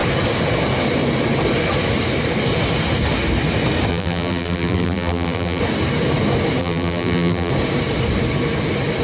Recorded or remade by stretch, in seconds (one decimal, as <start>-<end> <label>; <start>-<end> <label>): 0.0-3.9 recorded; 3.9-5.6 remade; 5.6-6.6 recorded; 6.6-7.5 remade; 7.5-9.0 recorded